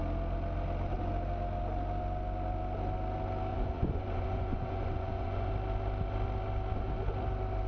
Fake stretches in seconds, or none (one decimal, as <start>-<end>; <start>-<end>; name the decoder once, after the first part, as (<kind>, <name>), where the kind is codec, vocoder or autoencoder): 3.5-5.5 (vocoder, Vocos)